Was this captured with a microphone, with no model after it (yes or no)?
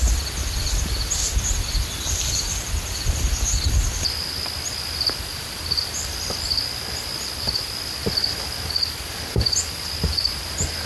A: no